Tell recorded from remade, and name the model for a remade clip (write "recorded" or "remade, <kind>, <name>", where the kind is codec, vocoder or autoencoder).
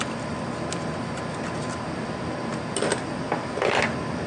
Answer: recorded